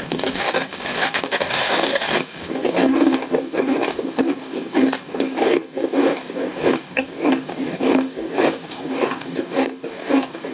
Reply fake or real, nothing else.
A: fake